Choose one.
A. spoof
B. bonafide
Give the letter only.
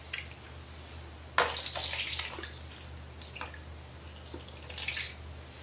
B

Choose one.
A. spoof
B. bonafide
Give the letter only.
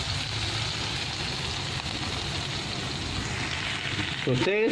B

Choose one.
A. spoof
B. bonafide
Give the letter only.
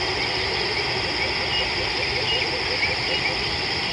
B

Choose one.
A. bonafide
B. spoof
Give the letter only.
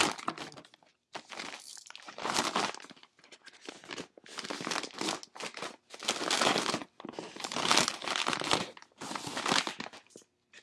A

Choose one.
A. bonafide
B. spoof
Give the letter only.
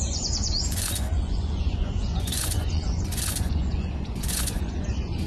B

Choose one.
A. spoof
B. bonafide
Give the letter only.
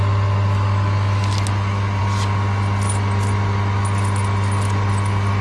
B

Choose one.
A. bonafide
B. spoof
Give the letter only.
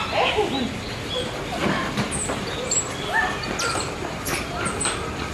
A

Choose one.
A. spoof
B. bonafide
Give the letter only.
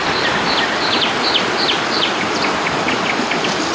B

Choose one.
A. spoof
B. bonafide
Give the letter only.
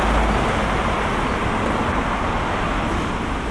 B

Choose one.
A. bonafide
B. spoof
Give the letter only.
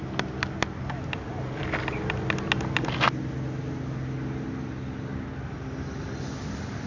A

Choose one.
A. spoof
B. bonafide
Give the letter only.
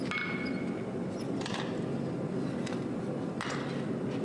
B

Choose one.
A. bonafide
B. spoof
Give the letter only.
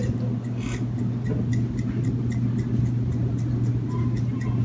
A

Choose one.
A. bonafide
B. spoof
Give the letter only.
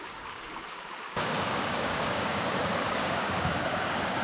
B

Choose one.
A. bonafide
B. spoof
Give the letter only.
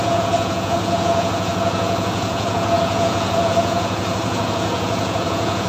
B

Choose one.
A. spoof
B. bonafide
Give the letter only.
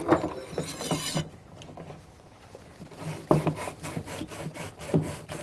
B